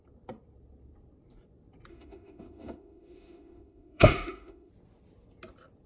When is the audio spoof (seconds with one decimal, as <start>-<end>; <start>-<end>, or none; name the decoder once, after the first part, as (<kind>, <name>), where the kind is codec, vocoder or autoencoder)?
1.9-4.7 (autoencoder, DAC-VAE)